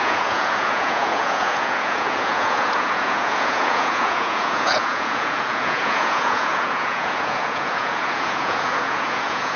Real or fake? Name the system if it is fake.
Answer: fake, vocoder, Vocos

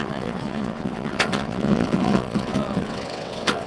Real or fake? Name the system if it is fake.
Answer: fake, vocoder, WaveNeXt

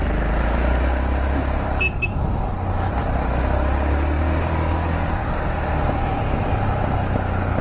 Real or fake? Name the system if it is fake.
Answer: real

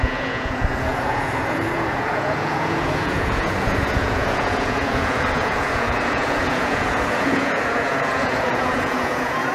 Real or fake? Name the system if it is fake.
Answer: fake, vocoder, Vocos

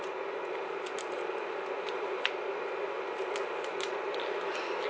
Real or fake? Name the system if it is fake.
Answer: fake, vocoder, BigVGAN v2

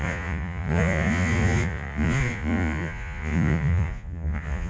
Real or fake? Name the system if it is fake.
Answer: fake, vocoder, Vocos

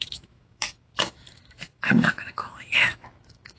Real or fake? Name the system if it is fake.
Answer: fake, autoencoder, DAC-VAE